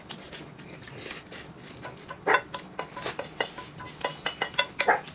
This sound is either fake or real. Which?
real